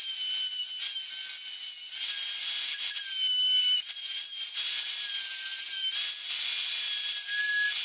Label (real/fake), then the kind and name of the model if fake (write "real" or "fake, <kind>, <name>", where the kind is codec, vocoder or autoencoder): real